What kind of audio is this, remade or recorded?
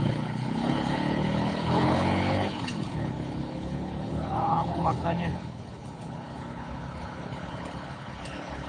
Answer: remade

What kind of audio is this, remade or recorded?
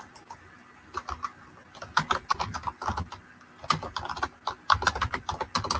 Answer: recorded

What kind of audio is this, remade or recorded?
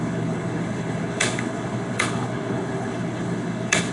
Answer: remade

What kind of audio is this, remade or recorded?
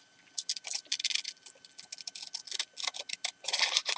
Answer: recorded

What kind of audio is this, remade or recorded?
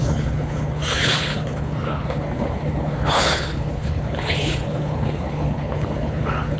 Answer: remade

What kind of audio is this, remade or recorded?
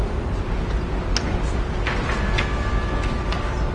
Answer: recorded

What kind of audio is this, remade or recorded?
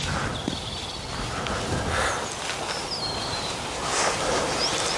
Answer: recorded